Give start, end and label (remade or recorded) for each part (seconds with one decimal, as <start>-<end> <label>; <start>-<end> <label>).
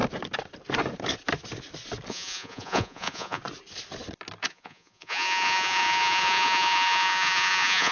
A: 0.0-2.1 recorded; 2.1-3.4 remade; 3.4-4.5 recorded; 4.5-7.9 remade